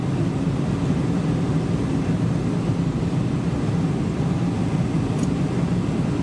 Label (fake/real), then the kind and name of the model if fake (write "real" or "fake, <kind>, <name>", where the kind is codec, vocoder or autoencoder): real